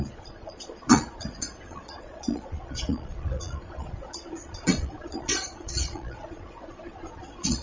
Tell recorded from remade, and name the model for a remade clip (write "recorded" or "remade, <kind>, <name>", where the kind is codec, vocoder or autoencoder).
remade, vocoder, Vocos